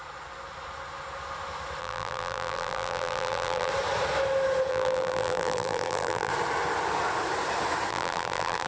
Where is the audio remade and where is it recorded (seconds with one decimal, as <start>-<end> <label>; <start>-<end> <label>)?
0.0-1.8 recorded; 1.8-3.7 remade; 3.7-4.7 recorded; 4.7-6.3 remade; 6.3-7.9 recorded; 7.9-8.7 remade